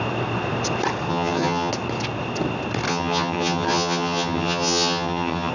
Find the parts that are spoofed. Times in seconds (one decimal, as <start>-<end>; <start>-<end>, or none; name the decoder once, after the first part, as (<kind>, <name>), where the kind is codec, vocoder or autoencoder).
1.1-1.7 (vocoder, HiFi-GAN); 2.9-5.5

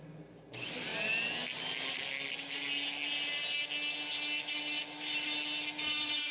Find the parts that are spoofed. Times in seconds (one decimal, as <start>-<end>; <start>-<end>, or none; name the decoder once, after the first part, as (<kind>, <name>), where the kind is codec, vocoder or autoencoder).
none

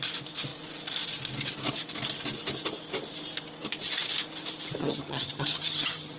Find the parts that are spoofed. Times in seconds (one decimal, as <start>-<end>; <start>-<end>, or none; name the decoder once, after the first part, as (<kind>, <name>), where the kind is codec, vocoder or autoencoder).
4.8-6.2 (vocoder, HiFi-GAN)

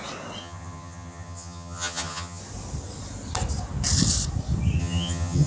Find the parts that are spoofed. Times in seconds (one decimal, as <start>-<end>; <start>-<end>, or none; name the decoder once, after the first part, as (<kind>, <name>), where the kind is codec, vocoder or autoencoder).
0.4-2.4 (vocoder, HiFi-GAN); 4.8-5.5

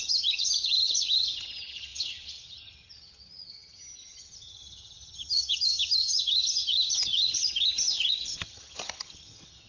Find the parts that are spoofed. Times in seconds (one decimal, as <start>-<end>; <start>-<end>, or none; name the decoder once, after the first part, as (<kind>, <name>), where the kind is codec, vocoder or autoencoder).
0.0-9.7 (vocoder, HiFi-GAN)

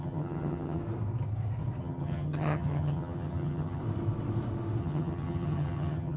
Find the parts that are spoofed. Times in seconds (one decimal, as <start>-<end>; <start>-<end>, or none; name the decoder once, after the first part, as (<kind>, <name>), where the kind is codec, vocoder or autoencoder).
0.0-0.8 (vocoder, HiFi-GAN); 1.8-3.8; 4.8-6.2

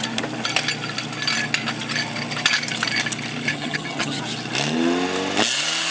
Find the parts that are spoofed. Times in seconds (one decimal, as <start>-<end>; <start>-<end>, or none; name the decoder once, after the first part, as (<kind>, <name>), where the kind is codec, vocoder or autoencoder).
3.5-4.2 (vocoder, HiFi-GAN)

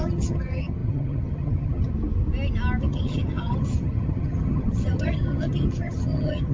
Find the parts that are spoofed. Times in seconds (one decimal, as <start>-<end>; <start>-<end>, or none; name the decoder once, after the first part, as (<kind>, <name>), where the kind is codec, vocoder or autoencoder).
0.0-1.9 (vocoder, HiFi-GAN); 2.8-6.5